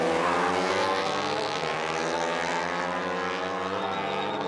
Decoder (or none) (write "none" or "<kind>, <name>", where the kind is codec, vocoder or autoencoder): none